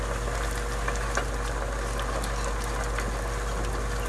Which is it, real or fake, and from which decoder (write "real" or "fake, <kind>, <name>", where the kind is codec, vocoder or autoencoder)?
real